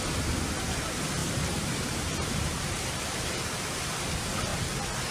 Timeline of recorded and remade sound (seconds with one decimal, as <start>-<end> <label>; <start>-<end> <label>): 0.0-1.2 recorded; 1.2-4.0 remade; 4.0-5.1 recorded